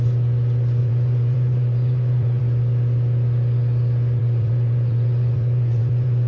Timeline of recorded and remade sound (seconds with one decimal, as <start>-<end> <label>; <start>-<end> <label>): 0.0-0.8 recorded; 0.8-2.4 remade; 2.4-4.2 recorded; 4.2-6.3 remade